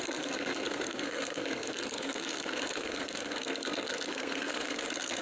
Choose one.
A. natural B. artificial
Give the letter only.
B